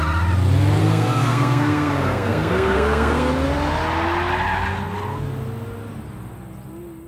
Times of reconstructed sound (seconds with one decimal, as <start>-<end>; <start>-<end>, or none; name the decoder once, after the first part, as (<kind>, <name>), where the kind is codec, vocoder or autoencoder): 0.8-3.3 (codec, SNAC)